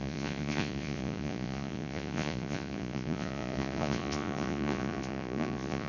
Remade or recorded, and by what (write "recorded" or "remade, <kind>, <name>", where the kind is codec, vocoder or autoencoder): remade, vocoder, Vocos